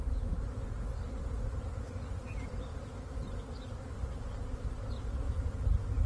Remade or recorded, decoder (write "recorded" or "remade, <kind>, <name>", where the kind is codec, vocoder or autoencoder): recorded